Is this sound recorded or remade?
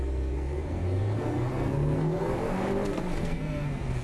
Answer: remade